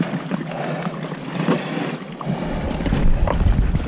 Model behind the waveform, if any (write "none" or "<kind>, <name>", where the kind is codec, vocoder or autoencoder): none